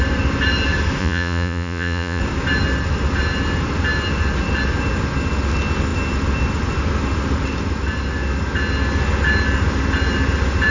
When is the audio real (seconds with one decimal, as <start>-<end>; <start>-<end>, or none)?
0.0-1.0; 2.2-10.7